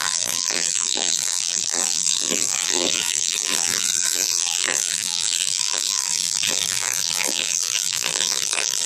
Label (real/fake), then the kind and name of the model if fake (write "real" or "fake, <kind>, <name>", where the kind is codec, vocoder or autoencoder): fake, vocoder, BigVGAN v2